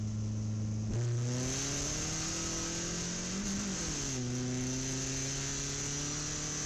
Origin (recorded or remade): recorded